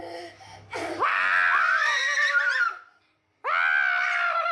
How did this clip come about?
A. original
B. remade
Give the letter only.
A